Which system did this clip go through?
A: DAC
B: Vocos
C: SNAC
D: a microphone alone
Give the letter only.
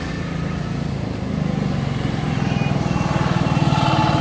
D